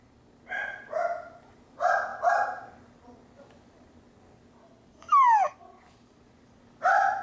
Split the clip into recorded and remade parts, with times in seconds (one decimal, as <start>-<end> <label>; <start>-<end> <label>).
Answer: 0.0-7.2 recorded